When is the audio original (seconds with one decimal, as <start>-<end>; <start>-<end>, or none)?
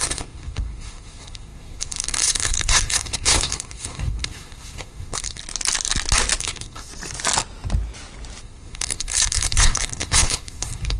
5.4-6.4; 6.9-8.4